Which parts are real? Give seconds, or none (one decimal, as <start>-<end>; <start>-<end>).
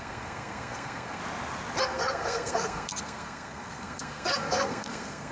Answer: 1.2-1.8